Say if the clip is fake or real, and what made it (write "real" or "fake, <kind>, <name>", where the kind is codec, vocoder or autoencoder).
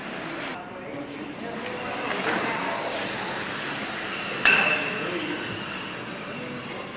real